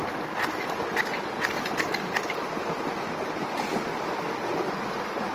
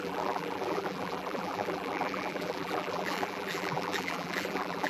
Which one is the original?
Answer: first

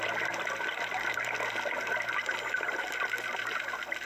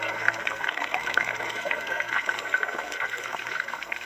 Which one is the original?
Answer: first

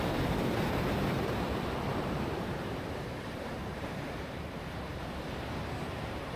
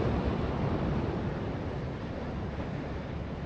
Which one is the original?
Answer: second